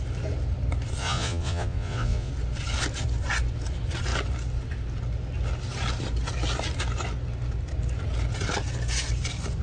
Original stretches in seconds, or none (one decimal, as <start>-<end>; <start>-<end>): 0.0-1.0; 2.3-9.6